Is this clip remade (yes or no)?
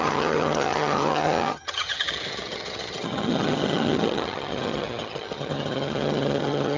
yes